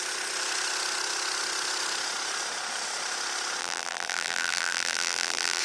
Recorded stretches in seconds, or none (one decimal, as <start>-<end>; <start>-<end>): 0.0-3.6